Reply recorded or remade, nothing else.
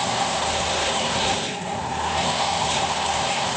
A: remade